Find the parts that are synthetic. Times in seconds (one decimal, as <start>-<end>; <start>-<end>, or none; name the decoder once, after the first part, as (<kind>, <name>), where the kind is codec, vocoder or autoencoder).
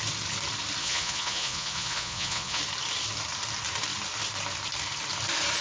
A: 0.8-2.6 (vocoder, Vocos)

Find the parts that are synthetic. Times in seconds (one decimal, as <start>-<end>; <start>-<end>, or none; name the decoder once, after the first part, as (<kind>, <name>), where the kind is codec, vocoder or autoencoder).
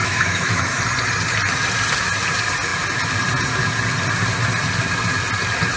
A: 0.0-0.8 (autoencoder, DAC-VAE)